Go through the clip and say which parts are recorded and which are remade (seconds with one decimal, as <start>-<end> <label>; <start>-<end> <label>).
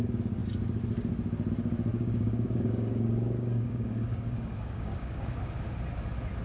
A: 0.0-1.9 recorded; 1.9-5.7 remade; 5.7-6.4 recorded